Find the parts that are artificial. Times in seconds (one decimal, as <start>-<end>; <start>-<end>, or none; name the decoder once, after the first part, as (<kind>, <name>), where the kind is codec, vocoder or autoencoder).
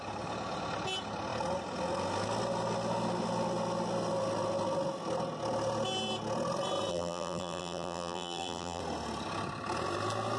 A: 6.9-8.8 (vocoder, BigVGAN v2)